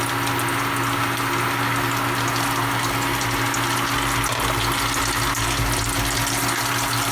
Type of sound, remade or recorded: recorded